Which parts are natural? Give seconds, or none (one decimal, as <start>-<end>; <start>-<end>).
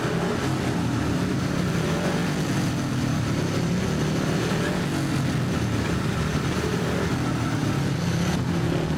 0.0-9.0